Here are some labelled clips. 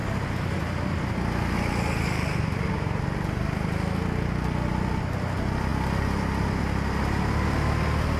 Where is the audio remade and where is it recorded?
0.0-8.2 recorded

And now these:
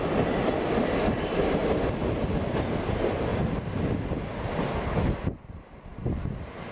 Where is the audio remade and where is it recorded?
0.0-2.0 remade; 2.0-2.9 recorded; 2.9-3.3 remade; 3.3-4.3 recorded; 4.3-5.9 remade; 5.9-6.7 recorded

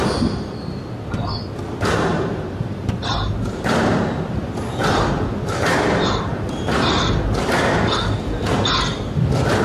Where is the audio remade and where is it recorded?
0.0-2.1 recorded; 2.1-3.9 remade; 3.9-9.6 recorded